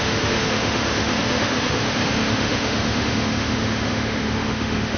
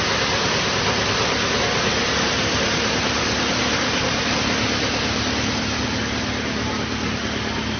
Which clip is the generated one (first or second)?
first